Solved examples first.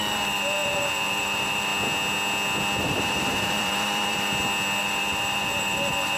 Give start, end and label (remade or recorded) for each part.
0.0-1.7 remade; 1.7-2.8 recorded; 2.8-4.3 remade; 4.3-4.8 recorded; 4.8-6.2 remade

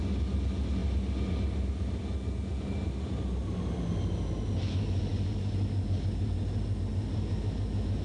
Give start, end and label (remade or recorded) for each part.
0.0-8.0 recorded

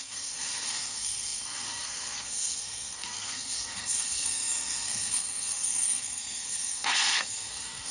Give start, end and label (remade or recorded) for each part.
0.0-7.9 remade

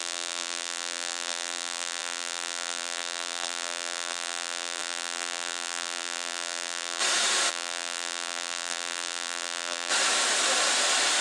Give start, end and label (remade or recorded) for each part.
0.0-7.0 remade; 7.0-7.5 recorded; 7.5-9.9 remade; 9.9-11.2 recorded

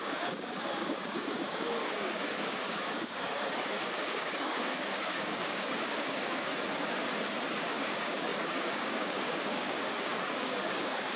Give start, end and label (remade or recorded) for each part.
0.0-6.5 remade; 6.5-7.6 recorded; 7.6-11.2 remade

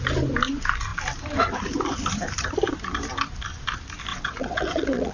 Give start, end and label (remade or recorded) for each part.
0.0-4.1 recorded; 4.1-5.1 remade

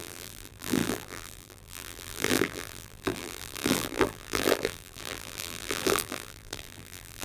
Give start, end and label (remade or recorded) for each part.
0.0-7.2 remade

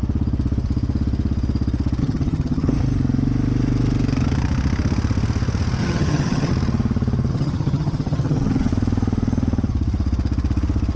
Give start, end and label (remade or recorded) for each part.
0.0-2.0 recorded; 2.0-2.7 remade; 2.7-5.8 recorded; 5.8-6.5 remade; 6.5-7.3 recorded; 7.3-8.7 remade; 8.7-11.0 recorded